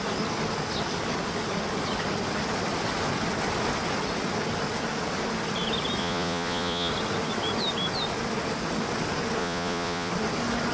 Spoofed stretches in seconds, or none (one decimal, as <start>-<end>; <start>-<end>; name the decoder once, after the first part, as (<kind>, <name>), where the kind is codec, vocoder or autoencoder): 6.0-6.9 (vocoder, Vocos); 9.4-10.1